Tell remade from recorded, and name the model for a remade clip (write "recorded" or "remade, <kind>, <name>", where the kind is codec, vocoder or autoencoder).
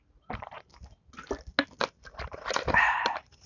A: recorded